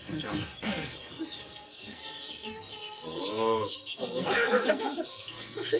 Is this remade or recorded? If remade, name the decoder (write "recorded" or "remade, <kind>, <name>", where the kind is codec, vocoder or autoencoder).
remade, codec, SNAC